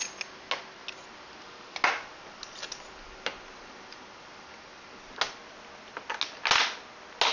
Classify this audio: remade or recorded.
recorded